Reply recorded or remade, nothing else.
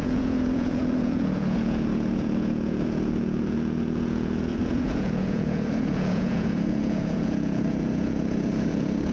remade